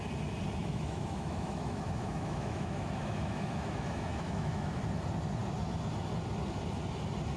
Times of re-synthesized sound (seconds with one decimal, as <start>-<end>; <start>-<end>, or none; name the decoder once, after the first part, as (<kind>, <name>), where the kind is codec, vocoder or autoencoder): 0.6-4.8 (autoencoder, DAC-VAE)